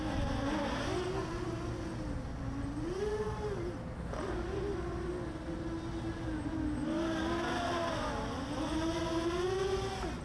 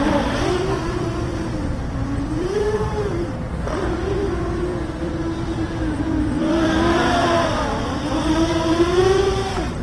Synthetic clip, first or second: second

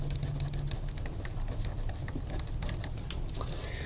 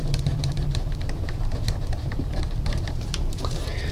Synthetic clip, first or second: second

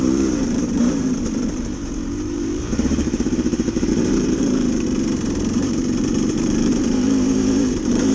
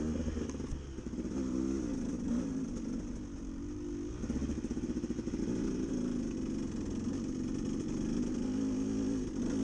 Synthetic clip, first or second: first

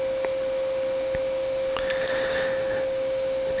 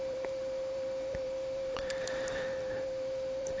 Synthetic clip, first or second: second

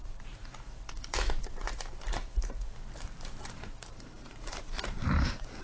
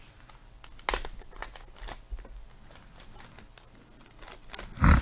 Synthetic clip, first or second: first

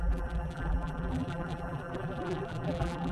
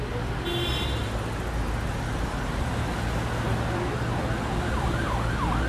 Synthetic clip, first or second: first